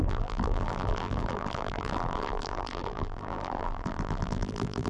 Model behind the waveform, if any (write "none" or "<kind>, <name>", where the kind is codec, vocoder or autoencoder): vocoder, BigVGAN v2